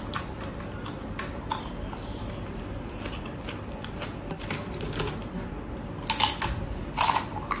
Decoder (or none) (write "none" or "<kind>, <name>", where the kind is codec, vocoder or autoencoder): none